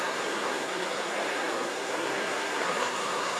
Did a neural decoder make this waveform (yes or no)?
yes